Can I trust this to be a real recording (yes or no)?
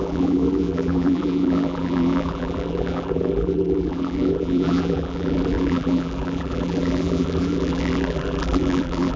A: no